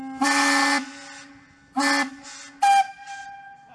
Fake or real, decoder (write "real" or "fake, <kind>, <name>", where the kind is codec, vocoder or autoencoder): real